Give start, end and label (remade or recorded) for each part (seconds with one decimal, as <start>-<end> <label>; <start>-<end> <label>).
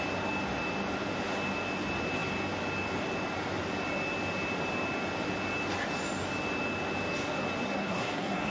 0.0-7.8 recorded; 7.8-8.5 remade